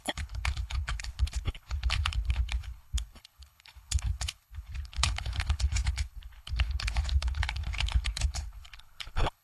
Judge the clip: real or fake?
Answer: fake